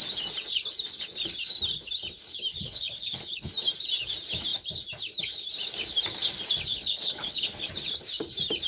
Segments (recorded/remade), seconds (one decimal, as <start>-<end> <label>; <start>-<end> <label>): 0.0-2.5 recorded; 2.5-3.5 remade; 3.5-6.7 recorded; 6.7-7.7 remade; 7.7-8.7 recorded